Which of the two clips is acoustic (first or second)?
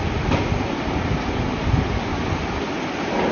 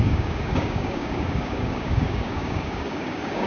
first